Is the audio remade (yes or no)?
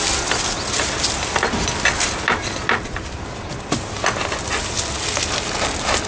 no